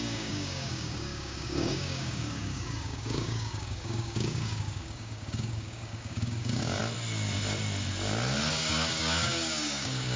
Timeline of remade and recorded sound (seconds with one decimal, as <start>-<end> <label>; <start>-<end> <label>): 0.0-6.8 remade; 6.8-8.5 recorded; 8.5-10.2 remade